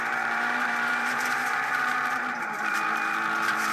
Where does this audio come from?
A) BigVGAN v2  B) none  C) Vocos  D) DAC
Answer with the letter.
A